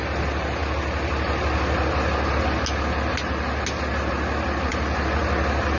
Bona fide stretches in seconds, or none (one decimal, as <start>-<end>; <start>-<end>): 0.0-5.8